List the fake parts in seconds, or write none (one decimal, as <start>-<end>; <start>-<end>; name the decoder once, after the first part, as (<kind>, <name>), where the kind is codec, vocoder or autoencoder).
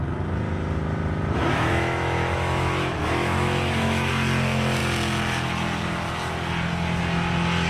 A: 1.7-4.1 (autoencoder, DAC-VAE)